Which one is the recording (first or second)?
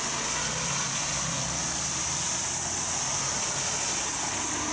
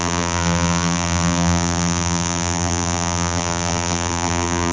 first